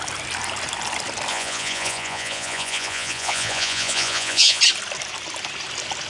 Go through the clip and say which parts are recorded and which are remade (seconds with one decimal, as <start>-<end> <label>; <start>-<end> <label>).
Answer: 0.0-1.3 recorded; 1.3-4.6 remade; 4.6-6.1 recorded